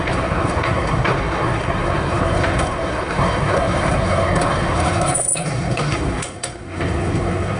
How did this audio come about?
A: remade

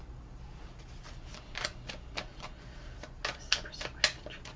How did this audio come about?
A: recorded